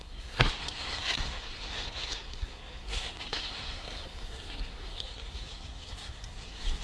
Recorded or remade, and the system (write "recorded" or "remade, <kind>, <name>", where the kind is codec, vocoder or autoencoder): remade, codec, SNAC